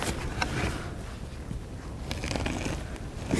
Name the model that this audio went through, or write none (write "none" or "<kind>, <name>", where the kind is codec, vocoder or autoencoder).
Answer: none